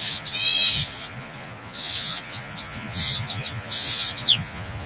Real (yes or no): no